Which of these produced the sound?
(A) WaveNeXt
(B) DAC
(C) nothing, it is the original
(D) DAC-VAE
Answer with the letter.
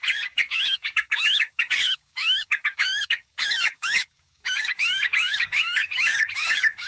B